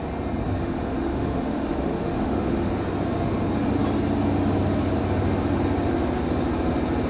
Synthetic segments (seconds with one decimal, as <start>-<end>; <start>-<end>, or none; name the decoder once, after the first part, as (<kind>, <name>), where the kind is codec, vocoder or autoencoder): 0.6-2.7 (autoencoder, DAC-VAE)